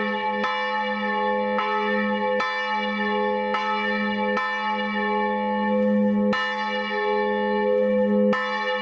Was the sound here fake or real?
real